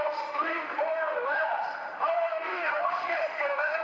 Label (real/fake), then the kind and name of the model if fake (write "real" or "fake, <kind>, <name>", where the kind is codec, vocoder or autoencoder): fake, autoencoder, DAC-VAE